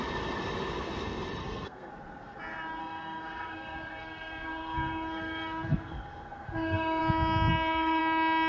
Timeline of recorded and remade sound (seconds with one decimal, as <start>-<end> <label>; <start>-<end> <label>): 0.0-1.4 recorded; 1.4-1.9 remade; 1.9-2.8 recorded; 2.8-7.0 remade; 7.0-7.5 recorded; 7.5-8.0 remade; 8.0-8.5 recorded